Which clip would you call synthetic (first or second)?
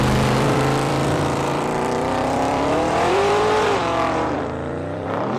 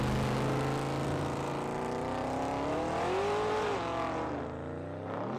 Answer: first